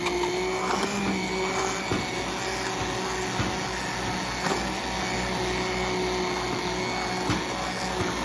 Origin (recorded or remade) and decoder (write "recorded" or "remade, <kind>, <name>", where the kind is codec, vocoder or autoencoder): recorded